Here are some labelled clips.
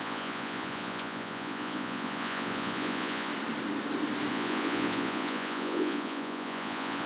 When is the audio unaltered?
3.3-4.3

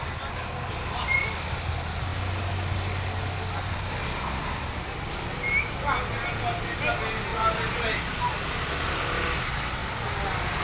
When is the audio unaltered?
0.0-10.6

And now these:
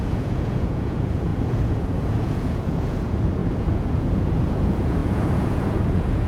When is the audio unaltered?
none